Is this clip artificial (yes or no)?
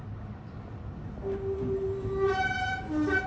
no